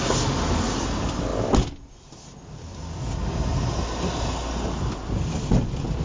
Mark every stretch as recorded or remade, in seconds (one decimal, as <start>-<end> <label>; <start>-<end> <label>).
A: 0.0-6.0 recorded

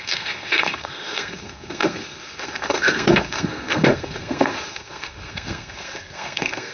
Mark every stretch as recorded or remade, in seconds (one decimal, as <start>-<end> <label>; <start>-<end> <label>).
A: 0.0-6.7 remade

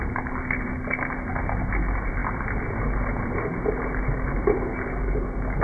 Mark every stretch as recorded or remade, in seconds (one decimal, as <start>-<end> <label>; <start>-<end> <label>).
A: 0.0-5.6 recorded

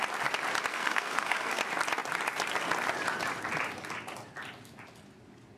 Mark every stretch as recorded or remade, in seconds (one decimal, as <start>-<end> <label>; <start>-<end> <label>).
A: 0.0-0.7 recorded; 0.7-1.6 remade; 1.6-5.6 recorded

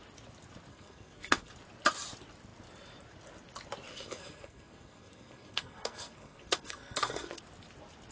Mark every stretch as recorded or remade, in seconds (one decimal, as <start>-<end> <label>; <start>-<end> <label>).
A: 0.0-0.7 recorded; 0.7-1.5 remade; 1.5-3.9 recorded; 3.9-7.4 remade; 7.4-8.1 recorded